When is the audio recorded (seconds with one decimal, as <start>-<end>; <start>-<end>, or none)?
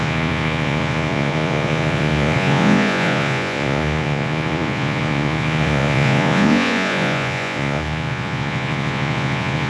none